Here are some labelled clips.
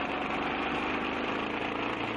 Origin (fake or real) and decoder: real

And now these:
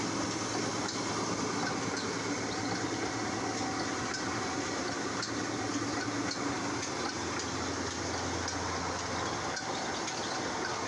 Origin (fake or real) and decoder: real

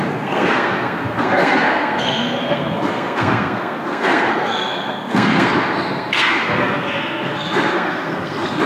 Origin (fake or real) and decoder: fake, codec, SNAC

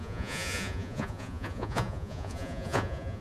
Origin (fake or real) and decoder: fake, vocoder, Vocos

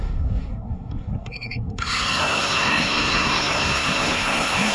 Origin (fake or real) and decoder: fake, codec, SNAC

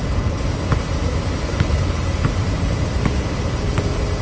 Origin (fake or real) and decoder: real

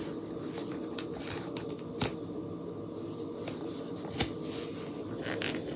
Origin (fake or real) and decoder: real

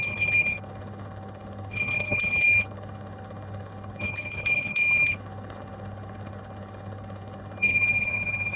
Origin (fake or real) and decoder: fake, codec, HILCodec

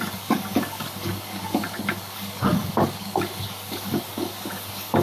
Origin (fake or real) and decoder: fake, codec, DAC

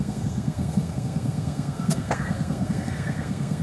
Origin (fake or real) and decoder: fake, codec, SNAC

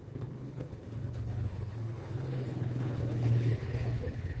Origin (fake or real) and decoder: fake, codec, HILCodec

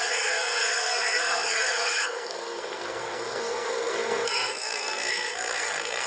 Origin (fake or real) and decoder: fake, codec, SNAC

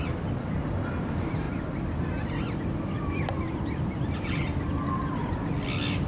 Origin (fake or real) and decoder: real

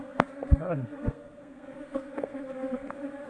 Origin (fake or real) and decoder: fake, codec, SNAC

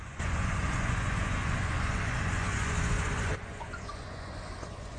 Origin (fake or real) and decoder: fake, vocoder, Vocos